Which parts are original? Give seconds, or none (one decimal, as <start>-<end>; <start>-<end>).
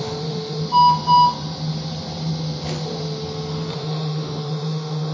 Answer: 0.6-3.7